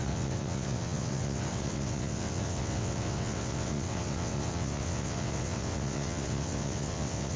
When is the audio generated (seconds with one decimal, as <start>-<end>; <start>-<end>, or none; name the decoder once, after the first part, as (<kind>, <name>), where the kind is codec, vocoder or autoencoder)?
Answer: 0.0-7.4 (vocoder, WaveNeXt)